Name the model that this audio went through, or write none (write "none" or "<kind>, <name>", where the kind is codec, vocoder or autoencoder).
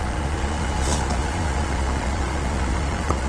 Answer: vocoder, Vocos